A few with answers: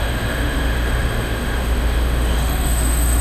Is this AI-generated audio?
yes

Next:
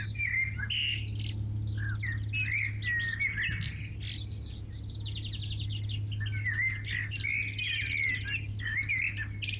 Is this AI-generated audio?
no